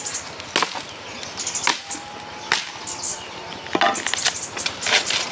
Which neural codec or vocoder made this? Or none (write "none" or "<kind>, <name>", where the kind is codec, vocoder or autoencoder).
none